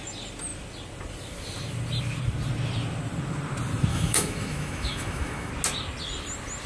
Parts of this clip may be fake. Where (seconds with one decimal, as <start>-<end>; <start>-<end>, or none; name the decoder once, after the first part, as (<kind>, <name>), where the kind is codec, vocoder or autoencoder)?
3.9-5.5 (autoencoder, DAC-VAE)